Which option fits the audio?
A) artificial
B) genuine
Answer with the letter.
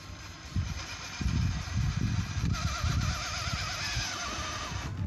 B